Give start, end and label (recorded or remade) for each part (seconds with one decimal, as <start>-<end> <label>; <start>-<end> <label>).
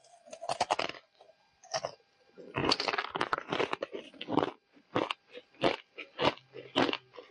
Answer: 0.0-7.3 recorded